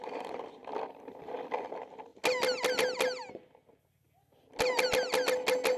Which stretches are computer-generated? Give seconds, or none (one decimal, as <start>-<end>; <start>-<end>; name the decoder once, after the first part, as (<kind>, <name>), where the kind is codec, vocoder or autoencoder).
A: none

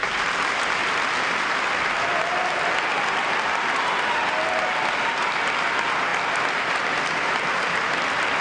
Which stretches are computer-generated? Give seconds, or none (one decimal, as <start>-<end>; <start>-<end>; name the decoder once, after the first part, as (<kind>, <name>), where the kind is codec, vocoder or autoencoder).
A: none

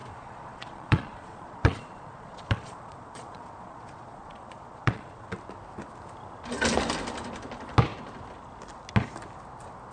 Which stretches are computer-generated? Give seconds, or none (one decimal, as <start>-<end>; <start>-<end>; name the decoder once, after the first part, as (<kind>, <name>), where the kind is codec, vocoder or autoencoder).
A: 0.0-5.3 (vocoder, Vocos)

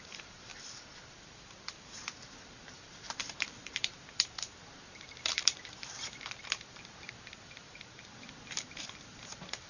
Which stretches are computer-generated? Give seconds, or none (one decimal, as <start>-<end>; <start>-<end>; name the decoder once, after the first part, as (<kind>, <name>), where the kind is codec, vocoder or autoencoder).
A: 0.0-0.5 (vocoder, BigVGAN v2); 1.1-9.7